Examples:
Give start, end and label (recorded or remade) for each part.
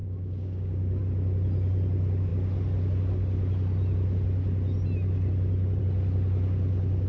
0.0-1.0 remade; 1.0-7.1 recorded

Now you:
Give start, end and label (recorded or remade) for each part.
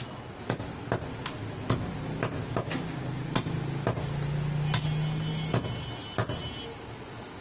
0.0-7.4 recorded